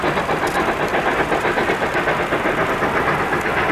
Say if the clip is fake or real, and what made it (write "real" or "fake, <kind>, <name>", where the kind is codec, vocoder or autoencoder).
real